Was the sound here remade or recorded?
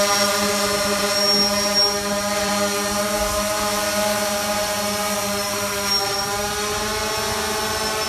recorded